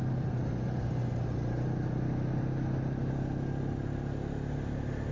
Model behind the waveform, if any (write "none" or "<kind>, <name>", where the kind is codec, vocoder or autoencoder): none